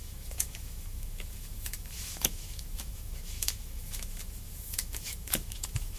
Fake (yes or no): yes